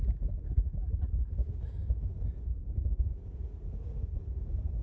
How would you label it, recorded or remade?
recorded